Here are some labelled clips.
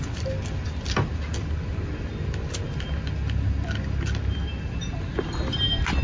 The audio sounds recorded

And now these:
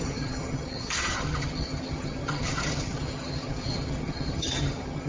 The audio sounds remade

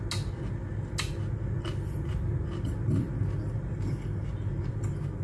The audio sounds recorded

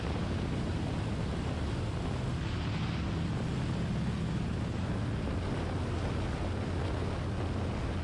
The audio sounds recorded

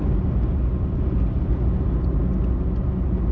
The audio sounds recorded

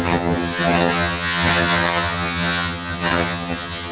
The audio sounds remade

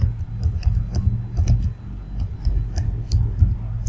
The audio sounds recorded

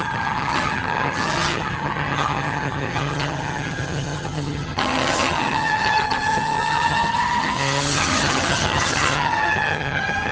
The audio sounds remade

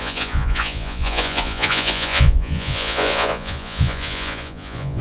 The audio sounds remade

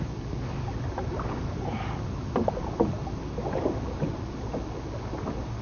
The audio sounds recorded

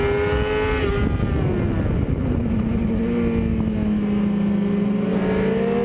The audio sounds recorded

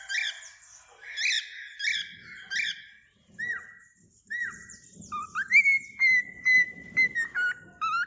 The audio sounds recorded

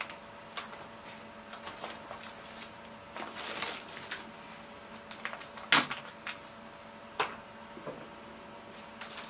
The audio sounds recorded